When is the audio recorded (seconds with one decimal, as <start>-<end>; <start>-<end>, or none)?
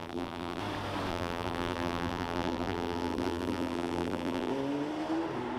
0.6-1.1; 4.5-5.6